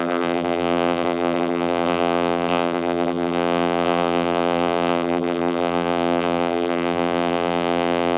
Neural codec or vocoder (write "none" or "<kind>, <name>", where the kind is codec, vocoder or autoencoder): vocoder, BigVGAN v2